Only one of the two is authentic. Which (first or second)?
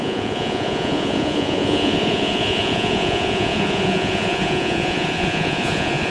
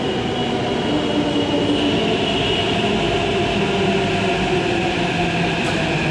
second